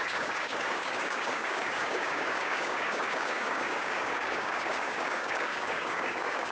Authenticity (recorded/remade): remade